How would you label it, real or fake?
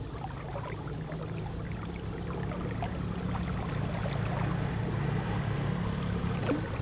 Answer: real